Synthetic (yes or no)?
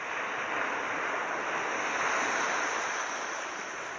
no